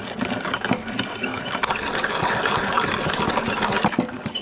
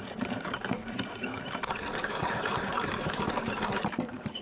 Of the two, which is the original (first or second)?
first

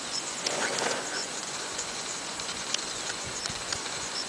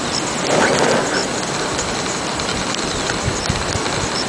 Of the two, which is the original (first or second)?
second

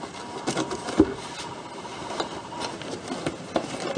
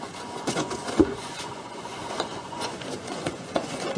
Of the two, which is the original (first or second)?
first